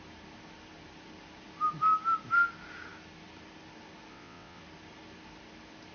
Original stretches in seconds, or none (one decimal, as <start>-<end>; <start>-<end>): 0.0-4.1; 4.6-5.9